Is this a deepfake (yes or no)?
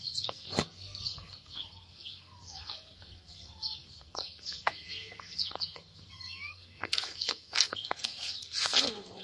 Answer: yes